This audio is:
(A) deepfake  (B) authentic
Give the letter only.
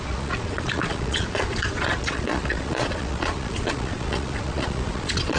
A